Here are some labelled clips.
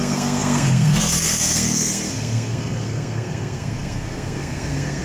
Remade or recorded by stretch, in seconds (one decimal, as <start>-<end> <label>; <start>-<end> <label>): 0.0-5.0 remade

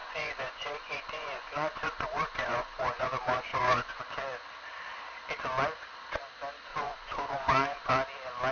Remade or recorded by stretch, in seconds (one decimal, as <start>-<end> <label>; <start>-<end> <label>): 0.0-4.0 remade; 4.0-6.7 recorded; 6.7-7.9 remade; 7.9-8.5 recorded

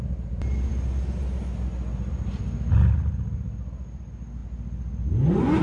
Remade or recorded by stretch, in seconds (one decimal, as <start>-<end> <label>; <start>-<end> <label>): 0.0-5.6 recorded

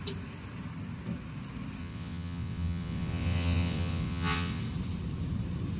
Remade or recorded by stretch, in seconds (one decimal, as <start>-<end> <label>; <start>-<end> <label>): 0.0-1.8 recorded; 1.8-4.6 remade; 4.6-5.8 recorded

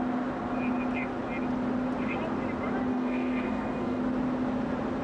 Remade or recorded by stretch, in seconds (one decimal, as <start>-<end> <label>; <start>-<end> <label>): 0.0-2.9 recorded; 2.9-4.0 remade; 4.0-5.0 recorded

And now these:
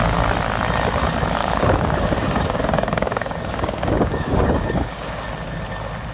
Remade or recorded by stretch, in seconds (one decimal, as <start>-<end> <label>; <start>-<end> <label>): 0.0-1.4 recorded; 1.4-5.1 remade; 5.1-6.1 recorded

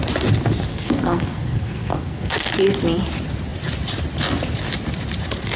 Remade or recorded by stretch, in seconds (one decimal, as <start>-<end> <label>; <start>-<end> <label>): 0.0-0.7 recorded; 0.7-2.5 remade; 2.5-5.6 recorded

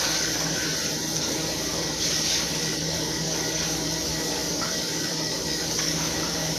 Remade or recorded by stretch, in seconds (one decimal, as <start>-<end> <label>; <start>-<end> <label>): 0.0-0.6 remade; 0.6-1.2 recorded; 1.2-6.6 remade